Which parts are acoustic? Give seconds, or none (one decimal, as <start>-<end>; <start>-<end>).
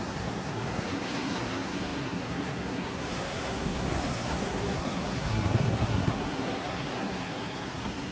none